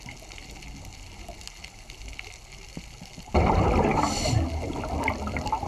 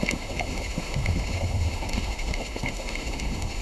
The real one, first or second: first